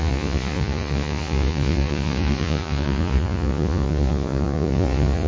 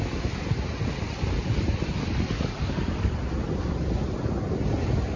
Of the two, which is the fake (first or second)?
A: first